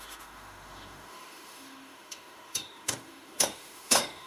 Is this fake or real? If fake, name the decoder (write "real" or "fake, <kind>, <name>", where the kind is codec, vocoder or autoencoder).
fake, autoencoder, DAC-VAE